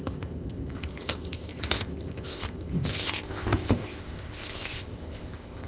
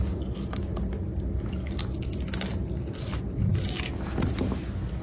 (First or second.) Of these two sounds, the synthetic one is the first